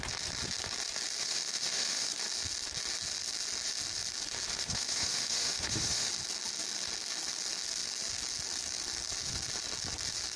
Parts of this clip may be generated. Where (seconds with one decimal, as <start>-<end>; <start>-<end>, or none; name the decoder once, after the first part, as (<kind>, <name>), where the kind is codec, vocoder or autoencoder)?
1.2-2.1 (autoencoder, DAC-VAE); 4.5-6.1